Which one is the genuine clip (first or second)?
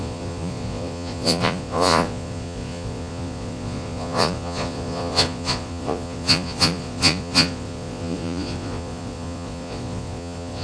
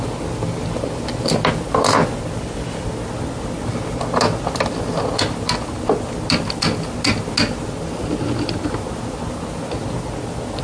second